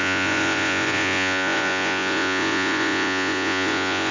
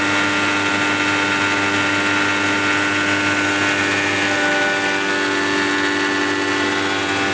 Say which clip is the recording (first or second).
second